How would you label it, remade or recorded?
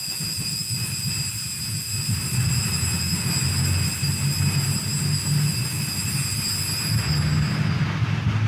recorded